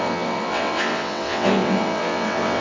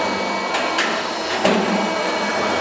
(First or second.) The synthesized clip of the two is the first